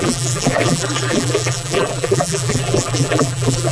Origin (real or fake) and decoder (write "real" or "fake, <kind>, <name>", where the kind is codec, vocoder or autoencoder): fake, vocoder, BigVGAN v2